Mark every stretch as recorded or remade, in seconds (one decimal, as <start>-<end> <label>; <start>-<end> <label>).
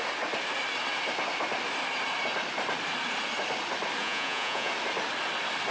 0.0-4.0 recorded; 4.0-4.7 remade; 4.7-5.7 recorded